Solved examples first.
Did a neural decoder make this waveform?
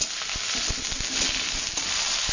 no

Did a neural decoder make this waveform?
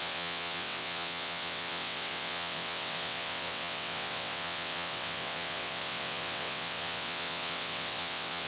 yes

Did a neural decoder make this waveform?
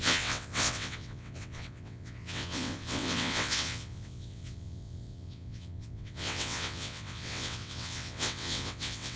yes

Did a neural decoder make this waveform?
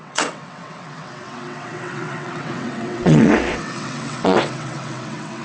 yes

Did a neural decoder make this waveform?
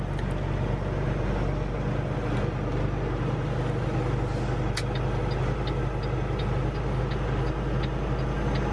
no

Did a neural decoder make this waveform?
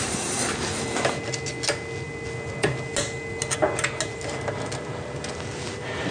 no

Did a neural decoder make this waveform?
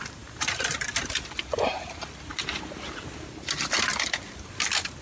no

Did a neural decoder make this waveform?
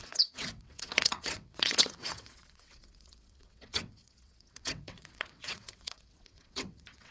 yes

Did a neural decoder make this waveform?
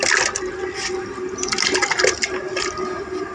no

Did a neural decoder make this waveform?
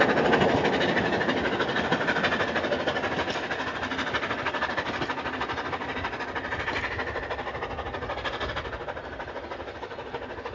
no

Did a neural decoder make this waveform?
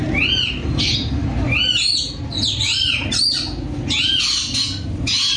no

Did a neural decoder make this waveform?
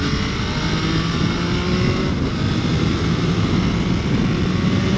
no